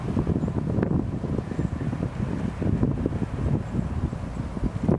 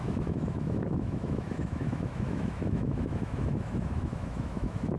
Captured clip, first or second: first